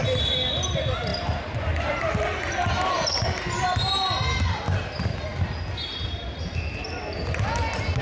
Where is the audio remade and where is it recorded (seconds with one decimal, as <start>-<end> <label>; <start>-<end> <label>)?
0.0-8.0 recorded